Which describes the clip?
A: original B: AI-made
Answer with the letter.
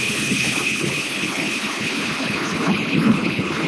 B